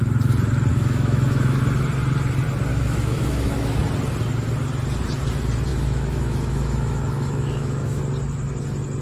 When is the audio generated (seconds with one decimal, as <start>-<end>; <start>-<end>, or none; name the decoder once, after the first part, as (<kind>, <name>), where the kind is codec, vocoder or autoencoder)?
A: 0.7-1.6 (autoencoder, DAC-VAE); 2.7-3.8; 5.7-8.0